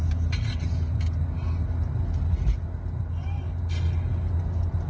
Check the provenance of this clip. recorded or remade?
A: recorded